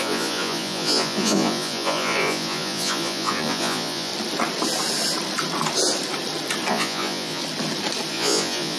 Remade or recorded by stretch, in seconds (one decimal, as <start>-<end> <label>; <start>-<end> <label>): 0.0-4.1 remade; 4.1-6.7 recorded; 6.7-7.4 remade; 7.4-8.1 recorded; 8.1-8.8 remade